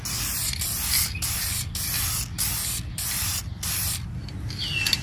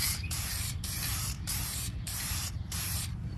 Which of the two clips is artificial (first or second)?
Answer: second